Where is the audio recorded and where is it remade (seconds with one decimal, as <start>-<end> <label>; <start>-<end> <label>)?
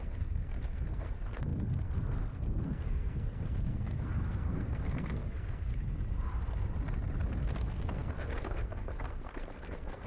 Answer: 0.0-5.7 remade; 5.7-7.5 recorded; 7.5-10.1 remade